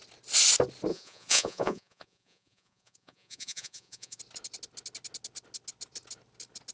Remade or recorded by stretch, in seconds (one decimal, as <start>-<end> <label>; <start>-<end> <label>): 0.0-0.9 recorded; 0.9-4.2 remade; 4.2-6.7 recorded